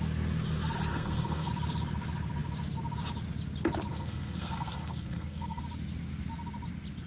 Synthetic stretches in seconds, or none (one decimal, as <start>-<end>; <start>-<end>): 0.9-1.5; 3.9-5.6

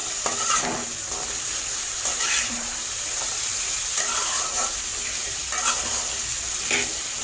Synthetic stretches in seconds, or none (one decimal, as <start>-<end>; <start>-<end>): 2.1-4.9

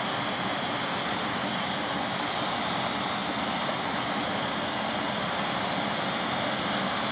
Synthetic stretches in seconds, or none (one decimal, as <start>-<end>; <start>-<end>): none

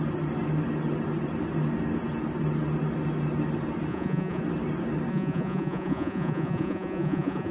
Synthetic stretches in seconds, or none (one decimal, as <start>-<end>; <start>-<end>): 3.9-4.4; 5.1-7.5